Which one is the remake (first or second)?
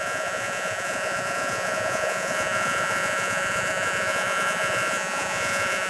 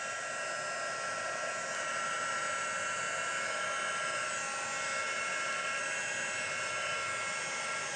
first